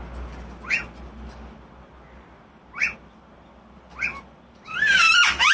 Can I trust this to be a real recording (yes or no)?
yes